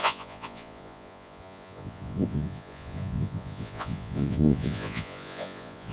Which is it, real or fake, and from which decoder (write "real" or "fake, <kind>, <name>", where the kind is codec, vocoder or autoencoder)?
fake, vocoder, Vocos